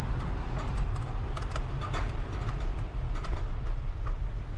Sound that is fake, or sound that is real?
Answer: real